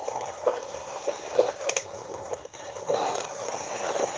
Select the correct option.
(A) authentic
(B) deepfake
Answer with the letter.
B